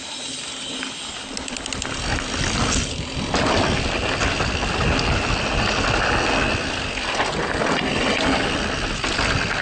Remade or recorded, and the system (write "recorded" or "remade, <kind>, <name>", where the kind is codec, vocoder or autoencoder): recorded